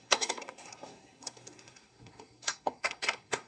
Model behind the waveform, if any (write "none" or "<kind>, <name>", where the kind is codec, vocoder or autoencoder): codec, SNAC